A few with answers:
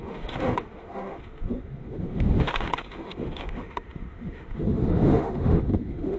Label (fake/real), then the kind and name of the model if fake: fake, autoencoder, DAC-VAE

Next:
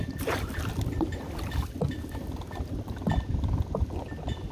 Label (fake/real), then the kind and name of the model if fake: real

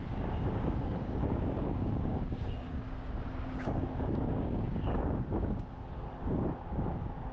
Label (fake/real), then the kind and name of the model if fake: fake, codec, DAC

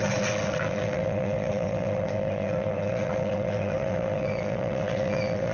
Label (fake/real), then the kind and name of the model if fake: fake, vocoder, WaveNeXt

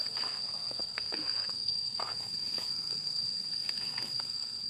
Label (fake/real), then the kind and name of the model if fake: fake, codec, SNAC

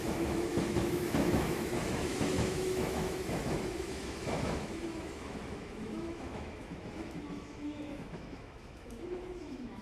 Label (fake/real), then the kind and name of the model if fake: fake, autoencoder, DAC-VAE